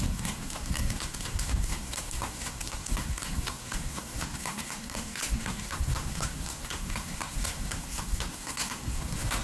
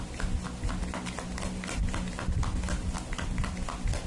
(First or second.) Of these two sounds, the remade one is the first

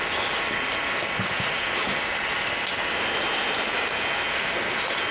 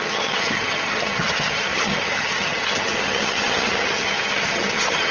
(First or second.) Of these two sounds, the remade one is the second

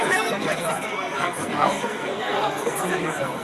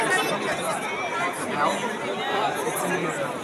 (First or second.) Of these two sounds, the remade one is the first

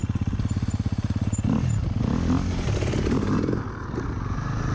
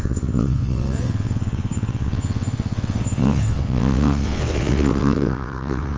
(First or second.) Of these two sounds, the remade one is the second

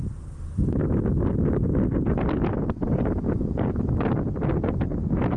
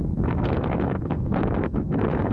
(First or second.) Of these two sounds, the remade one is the second